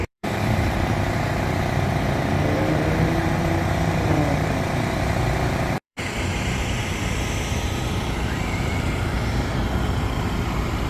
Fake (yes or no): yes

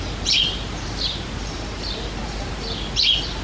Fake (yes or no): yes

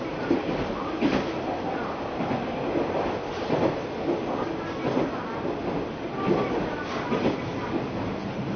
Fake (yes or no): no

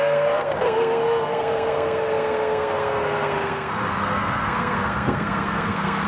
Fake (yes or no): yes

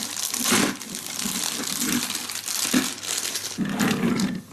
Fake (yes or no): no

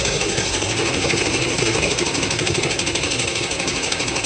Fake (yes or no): yes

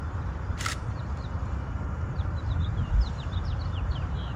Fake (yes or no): yes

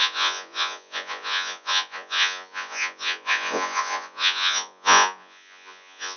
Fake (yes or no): yes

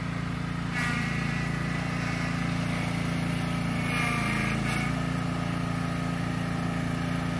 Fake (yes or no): no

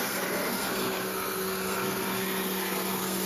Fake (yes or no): yes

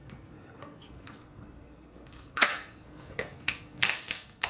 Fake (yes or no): yes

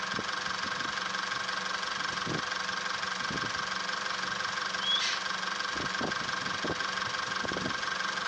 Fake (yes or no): no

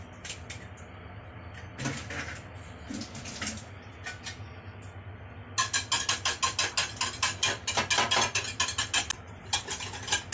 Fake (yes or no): no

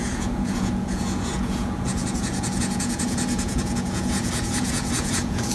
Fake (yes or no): yes